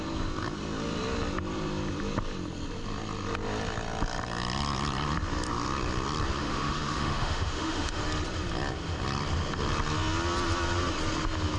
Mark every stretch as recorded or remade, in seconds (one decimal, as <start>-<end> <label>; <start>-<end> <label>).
0.0-6.4 recorded; 6.4-8.0 remade; 8.0-11.6 recorded